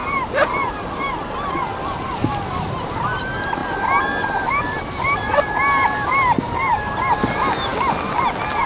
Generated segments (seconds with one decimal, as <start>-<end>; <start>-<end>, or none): none